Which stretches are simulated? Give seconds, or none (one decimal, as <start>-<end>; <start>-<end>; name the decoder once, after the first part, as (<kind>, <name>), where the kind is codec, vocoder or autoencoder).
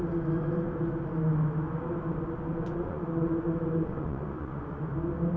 2.5-4.8 (vocoder, Vocos)